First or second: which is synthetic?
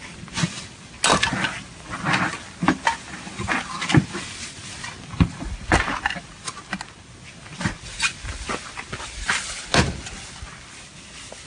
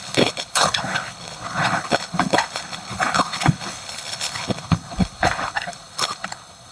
second